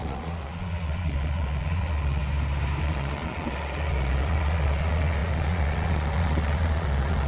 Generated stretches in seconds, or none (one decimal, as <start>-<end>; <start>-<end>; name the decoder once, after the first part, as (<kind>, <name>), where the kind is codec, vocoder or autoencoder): 0.0-2.2 (vocoder, Vocos); 2.8-7.3